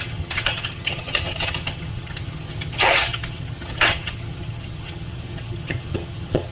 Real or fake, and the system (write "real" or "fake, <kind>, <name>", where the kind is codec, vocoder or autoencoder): fake, vocoder, HiFi-GAN